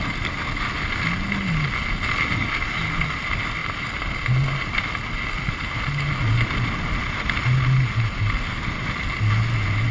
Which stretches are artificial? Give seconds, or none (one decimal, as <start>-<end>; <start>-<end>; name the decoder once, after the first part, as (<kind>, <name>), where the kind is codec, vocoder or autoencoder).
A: none